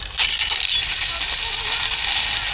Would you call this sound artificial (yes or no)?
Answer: no